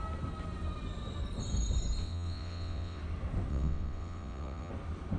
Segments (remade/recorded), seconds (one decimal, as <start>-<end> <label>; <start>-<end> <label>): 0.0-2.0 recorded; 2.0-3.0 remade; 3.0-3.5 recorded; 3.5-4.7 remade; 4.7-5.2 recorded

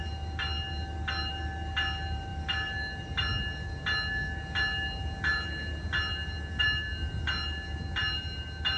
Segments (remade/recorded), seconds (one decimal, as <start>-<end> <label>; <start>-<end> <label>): 0.0-8.8 recorded

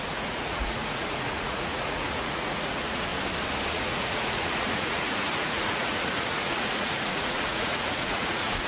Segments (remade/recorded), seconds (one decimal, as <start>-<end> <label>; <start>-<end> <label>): 0.0-3.1 remade; 3.1-3.7 recorded; 3.7-8.7 remade

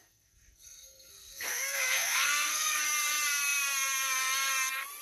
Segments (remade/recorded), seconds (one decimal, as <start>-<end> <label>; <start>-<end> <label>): 0.0-2.8 remade; 2.8-5.0 recorded

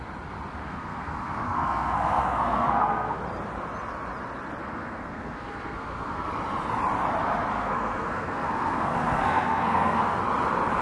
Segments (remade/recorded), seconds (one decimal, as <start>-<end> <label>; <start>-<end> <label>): 0.0-0.6 recorded; 0.6-3.2 remade; 3.2-4.6 recorded; 4.6-6.3 remade; 6.3-7.5 recorded; 7.5-10.2 remade; 10.2-10.8 recorded